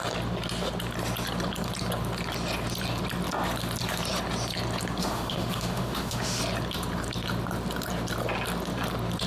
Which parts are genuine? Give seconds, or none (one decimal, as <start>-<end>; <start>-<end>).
0.0-5.0; 6.4-9.3